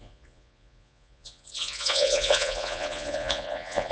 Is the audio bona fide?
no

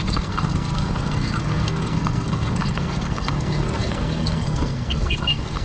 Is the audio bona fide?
no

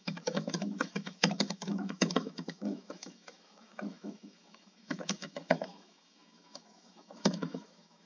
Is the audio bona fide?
no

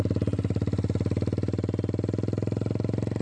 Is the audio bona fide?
yes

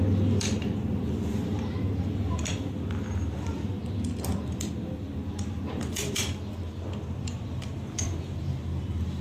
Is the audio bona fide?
no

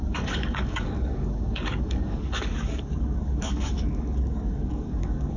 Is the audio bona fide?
no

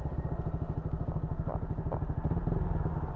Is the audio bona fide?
yes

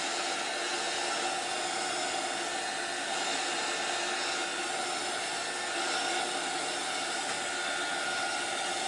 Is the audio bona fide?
yes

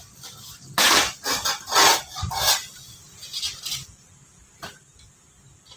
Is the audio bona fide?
yes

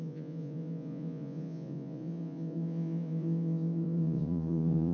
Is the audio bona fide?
no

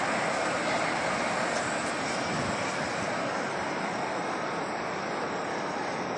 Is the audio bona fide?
yes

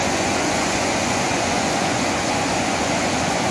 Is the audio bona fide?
no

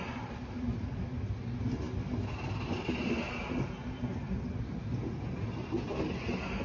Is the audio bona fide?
yes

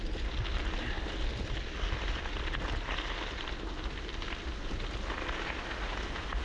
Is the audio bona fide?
yes